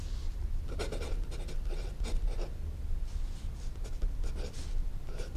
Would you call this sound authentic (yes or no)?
yes